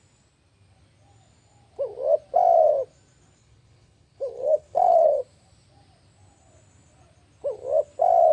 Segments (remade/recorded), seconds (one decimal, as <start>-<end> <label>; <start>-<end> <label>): 0.0-3.4 recorded; 3.4-5.2 remade; 5.2-8.3 recorded